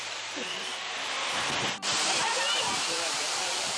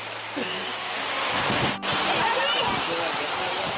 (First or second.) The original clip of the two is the second